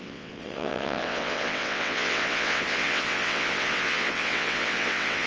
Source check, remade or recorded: remade